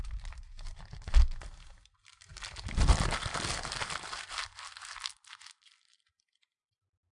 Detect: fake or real real